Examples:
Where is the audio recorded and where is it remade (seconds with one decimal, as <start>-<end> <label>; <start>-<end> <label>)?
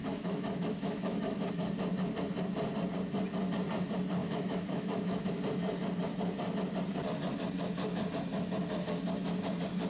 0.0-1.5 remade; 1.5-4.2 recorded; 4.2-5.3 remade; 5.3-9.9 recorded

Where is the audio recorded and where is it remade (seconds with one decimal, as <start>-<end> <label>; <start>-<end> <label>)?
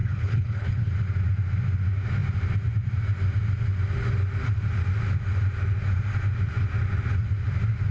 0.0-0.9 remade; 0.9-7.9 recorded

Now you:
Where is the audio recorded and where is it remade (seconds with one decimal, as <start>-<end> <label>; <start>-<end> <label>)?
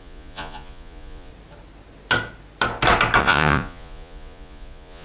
0.0-1.3 remade; 1.3-3.2 recorded; 3.2-5.0 remade